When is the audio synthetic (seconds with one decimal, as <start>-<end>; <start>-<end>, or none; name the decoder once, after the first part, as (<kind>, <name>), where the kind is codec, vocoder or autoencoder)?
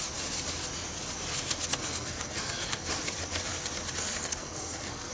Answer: 1.7-2.9 (codec, SNAC); 4.2-5.1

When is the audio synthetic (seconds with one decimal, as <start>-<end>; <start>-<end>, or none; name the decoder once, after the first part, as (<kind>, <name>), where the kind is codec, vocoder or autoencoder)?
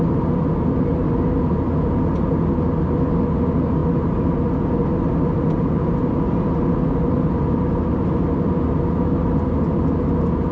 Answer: none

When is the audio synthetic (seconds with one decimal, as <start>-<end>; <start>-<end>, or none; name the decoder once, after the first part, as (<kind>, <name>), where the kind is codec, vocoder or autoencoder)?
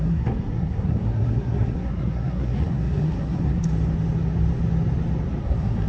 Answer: 0.0-3.7 (codec, SNAC); 5.4-5.9